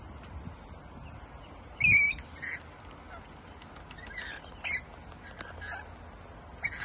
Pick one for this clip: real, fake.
real